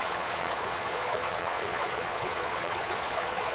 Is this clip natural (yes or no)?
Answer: no